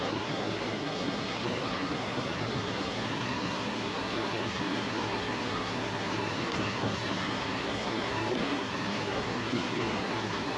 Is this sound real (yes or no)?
no